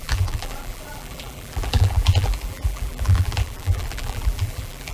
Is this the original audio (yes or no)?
no